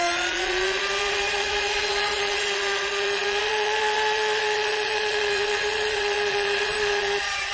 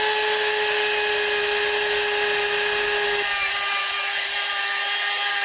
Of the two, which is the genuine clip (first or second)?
second